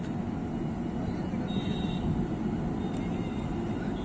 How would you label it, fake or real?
real